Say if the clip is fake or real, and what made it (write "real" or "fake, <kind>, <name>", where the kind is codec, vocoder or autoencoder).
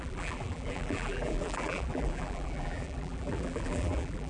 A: fake, vocoder, BigVGAN v2